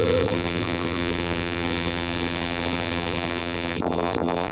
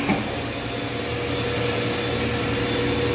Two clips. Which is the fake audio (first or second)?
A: first